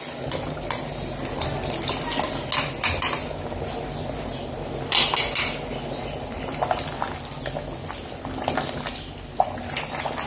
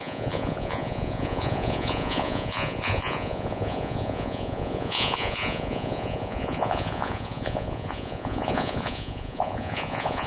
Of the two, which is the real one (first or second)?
first